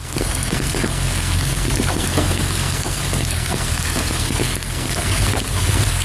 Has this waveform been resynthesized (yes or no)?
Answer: yes